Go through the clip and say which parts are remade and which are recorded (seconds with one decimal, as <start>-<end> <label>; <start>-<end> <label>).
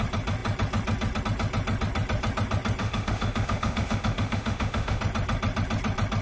0.0-2.8 recorded; 2.8-5.0 remade; 5.0-6.2 recorded